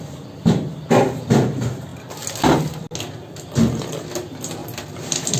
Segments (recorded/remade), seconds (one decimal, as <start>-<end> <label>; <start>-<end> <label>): 0.0-4.6 recorded; 4.6-5.4 remade